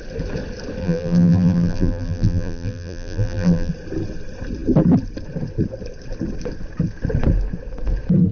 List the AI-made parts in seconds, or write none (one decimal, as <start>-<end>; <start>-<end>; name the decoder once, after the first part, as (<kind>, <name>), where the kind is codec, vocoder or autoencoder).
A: 0.8-3.7 (vocoder, BigVGAN v2)